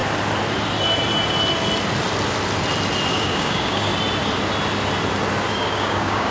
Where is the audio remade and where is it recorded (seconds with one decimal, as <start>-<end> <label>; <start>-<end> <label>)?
0.0-3.1 recorded; 3.1-3.9 remade; 3.9-5.5 recorded; 5.5-6.3 remade